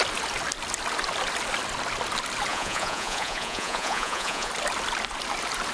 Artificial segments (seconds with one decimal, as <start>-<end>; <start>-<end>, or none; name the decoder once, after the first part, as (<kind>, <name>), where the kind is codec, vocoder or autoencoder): 2.5-4.5 (vocoder, Vocos)